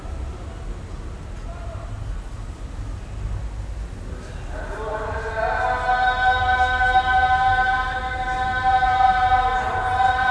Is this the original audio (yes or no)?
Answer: yes